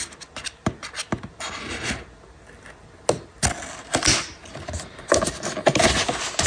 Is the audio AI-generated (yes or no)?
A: no